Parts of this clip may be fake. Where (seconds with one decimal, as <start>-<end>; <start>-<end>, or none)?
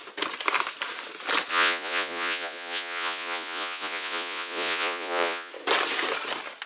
1.5-5.5